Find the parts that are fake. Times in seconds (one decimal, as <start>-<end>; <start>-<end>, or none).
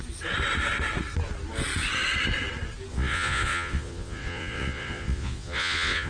2.9-6.1